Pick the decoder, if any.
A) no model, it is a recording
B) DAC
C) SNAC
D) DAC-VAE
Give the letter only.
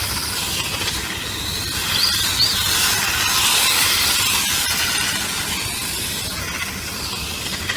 A